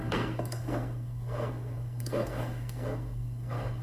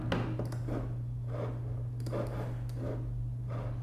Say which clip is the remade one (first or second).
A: first